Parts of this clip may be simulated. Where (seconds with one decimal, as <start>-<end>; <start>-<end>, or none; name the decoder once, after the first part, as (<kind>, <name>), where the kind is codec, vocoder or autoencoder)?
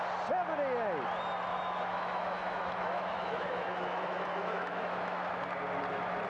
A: 1.5-5.3 (autoencoder, DAC-VAE)